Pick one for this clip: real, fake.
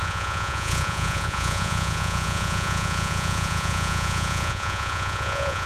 fake